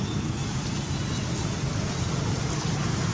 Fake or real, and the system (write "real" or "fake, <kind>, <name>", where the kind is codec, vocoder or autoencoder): real